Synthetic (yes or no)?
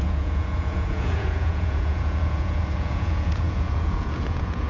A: yes